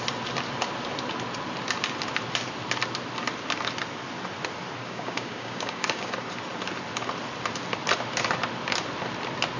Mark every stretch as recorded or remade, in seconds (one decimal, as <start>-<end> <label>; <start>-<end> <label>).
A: 0.0-4.8 recorded; 4.8-6.1 remade; 6.1-9.6 recorded